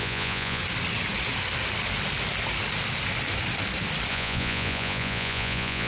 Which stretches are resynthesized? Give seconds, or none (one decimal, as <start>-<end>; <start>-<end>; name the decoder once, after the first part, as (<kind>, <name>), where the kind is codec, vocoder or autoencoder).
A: 0.0-0.6 (vocoder, Vocos); 4.1-5.9